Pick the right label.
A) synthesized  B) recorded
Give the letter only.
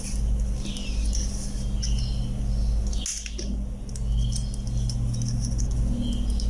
B